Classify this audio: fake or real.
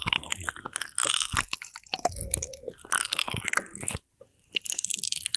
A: real